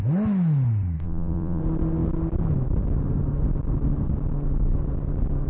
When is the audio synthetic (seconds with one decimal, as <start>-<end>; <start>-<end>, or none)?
1.0-1.6